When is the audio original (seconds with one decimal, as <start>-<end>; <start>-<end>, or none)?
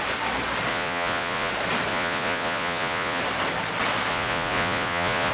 0.0-0.7; 1.5-1.9; 3.2-4.1